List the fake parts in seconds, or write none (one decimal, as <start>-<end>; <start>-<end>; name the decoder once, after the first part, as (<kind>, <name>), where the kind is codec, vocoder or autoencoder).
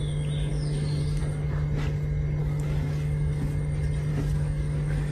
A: 0.5-1.2 (codec, DAC); 2.4-3.5; 4.1-5.1